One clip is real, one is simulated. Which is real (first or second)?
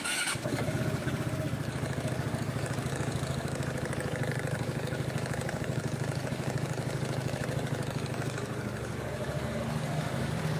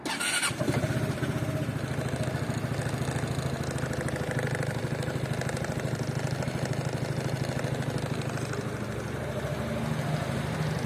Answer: second